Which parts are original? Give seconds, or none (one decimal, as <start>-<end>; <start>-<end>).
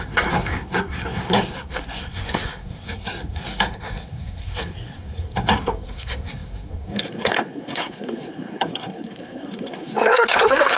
none